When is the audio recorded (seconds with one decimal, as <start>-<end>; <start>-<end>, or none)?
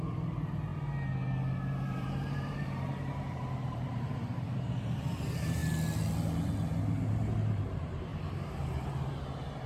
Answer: 0.7-1.9; 5.6-7.5